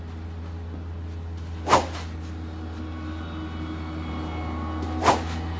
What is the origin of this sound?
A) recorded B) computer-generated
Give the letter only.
A